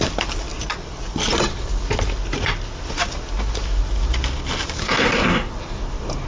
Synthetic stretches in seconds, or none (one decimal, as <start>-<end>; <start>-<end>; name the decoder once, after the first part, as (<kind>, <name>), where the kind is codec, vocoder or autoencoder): 4.8-5.5 (codec, SNAC)